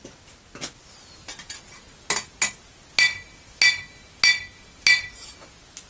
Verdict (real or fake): real